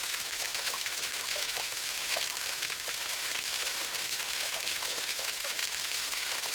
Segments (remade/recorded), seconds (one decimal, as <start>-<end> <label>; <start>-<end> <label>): 0.0-6.5 remade